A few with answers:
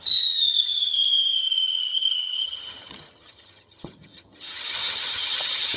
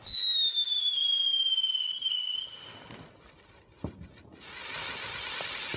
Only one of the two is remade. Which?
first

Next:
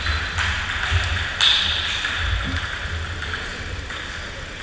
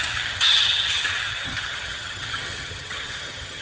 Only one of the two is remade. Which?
second